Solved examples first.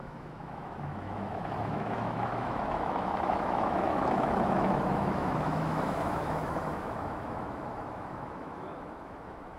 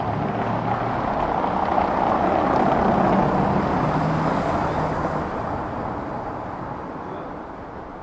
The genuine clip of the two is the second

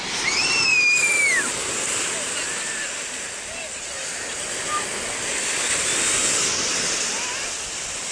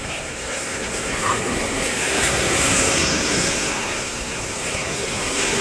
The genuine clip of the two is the first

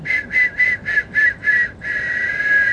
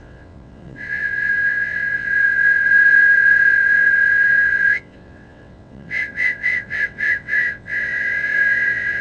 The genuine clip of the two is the first